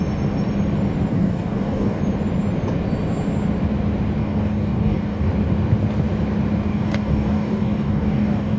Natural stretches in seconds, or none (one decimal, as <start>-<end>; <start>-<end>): 0.0-1.1; 2.0-4.2; 5.3-6.7

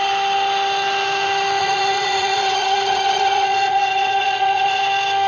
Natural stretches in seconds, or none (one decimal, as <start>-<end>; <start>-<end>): 0.0-1.6; 4.8-5.3

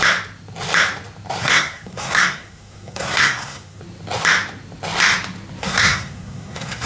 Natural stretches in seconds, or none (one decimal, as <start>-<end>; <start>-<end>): 0.0-1.4; 3.8-5.6